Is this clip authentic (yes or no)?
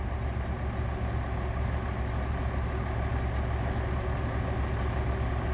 yes